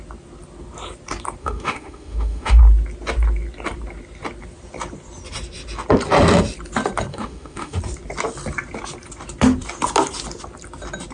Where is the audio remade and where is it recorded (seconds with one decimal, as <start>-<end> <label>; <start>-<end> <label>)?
0.0-1.4 recorded; 1.4-2.6 remade; 2.6-7.1 recorded; 7.1-7.8 remade; 7.8-11.1 recorded